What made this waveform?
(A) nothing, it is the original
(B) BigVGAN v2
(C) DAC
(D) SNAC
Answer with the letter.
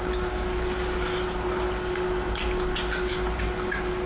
A